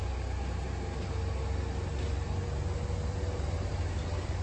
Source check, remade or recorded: recorded